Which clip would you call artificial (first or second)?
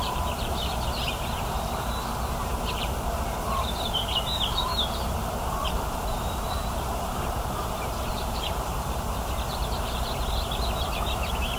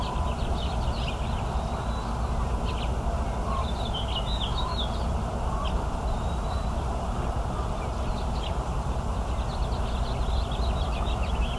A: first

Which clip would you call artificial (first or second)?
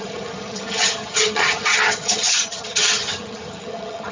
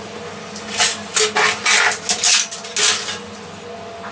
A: first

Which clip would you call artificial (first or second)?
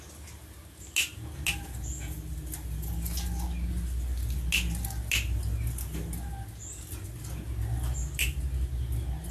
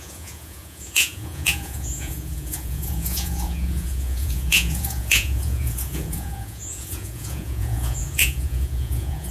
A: second